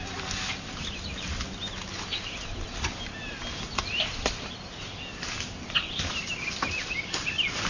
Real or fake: real